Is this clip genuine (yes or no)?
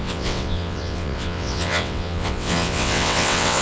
no